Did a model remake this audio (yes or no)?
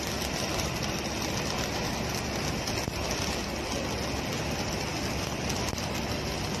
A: no